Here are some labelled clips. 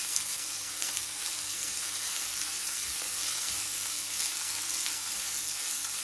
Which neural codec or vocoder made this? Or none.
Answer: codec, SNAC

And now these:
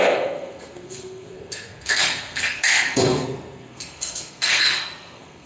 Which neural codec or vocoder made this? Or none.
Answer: codec, SNAC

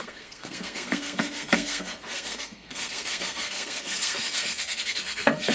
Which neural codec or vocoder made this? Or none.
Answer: codec, SNAC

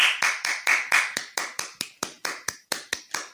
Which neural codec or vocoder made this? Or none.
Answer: none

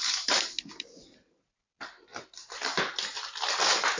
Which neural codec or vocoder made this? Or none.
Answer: none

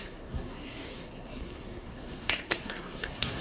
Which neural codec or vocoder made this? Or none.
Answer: codec, SNAC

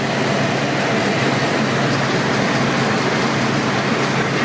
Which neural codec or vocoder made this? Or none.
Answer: none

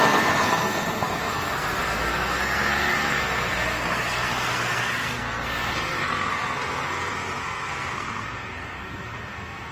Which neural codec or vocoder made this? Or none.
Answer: codec, SNAC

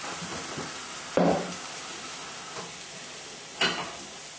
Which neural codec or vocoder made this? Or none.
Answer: none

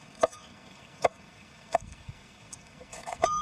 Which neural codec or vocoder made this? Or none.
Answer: codec, SNAC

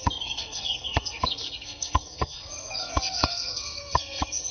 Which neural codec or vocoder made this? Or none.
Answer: codec, SNAC